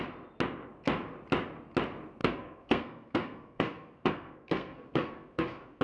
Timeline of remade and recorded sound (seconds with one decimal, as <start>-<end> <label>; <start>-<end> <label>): 0.0-2.2 recorded; 2.2-5.8 remade